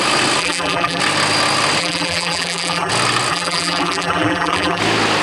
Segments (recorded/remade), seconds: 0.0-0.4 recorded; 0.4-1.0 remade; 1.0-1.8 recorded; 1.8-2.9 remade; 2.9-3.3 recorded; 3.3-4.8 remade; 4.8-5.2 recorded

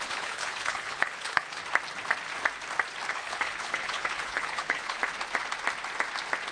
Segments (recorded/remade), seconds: 0.0-1.6 remade; 1.6-3.1 recorded; 3.1-5.0 remade; 5.0-6.5 recorded

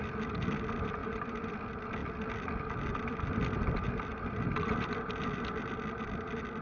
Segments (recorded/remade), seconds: 0.0-1.0 recorded; 1.0-1.5 remade; 1.5-2.0 recorded; 2.0-6.0 remade; 6.0-6.6 recorded

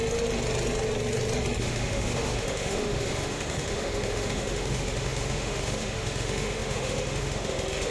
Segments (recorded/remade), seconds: 0.0-1.6 recorded; 1.6-7.9 remade

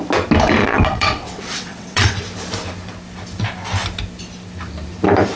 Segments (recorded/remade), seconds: 0.0-0.6 recorded; 0.6-2.2 remade; 2.2-5.4 recorded

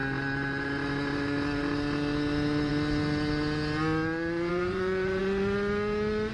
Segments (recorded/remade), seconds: 0.0-4.5 recorded; 4.5-5.2 remade; 5.2-6.3 recorded